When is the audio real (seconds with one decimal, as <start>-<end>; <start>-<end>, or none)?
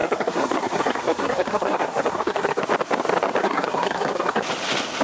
2.6-3.4; 4.4-5.0